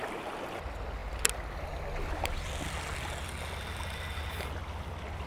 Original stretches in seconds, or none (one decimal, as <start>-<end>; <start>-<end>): 0.0-5.3